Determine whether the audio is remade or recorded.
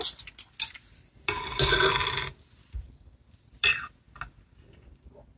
recorded